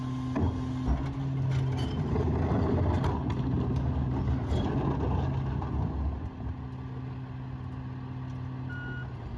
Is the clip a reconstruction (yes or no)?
no